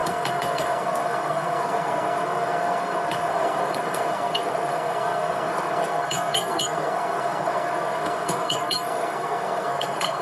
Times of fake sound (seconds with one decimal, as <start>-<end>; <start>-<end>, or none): 0.0-10.2